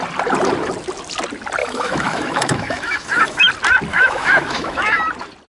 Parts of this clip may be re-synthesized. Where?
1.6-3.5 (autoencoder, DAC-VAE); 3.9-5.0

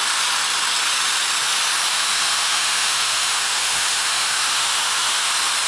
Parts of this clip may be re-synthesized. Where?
1.9-5.3 (autoencoder, DAC-VAE)

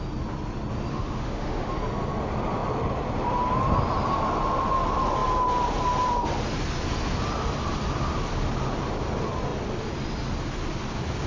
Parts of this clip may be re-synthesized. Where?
0.9-1.7 (autoencoder, DAC-VAE)

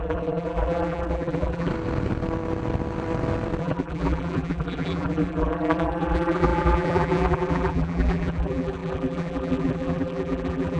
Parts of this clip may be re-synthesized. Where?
0.0-1.7 (vocoder, BigVGAN v2); 3.6-10.8

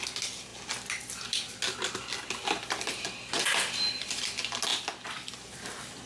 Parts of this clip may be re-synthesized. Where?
none

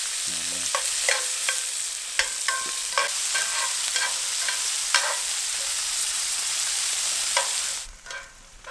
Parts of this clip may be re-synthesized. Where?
6.0-6.5 (vocoder, WaveNeXt)

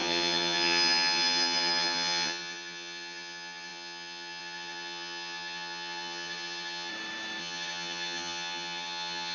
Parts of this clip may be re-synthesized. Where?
0.0-6.9 (vocoder, HiFi-GAN); 7.4-9.3

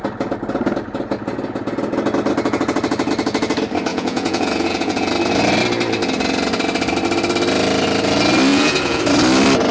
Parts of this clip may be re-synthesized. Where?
3.9-5.1 (vocoder, Vocos); 8.5-9.0